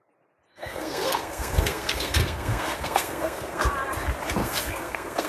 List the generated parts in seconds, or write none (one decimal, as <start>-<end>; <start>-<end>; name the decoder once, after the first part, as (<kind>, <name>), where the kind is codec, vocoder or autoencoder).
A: 0.5-3.7 (codec, SNAC); 4.4-5.3